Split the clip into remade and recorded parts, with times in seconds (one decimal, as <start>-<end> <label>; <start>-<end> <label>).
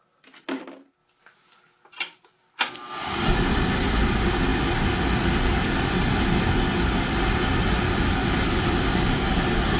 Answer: 0.0-9.8 recorded